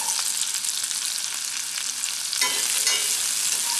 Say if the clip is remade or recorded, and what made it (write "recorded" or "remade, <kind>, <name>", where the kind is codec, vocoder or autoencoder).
recorded